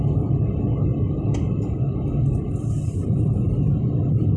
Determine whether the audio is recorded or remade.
recorded